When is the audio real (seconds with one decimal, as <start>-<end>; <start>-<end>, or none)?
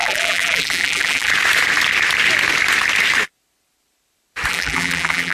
1.3-4.5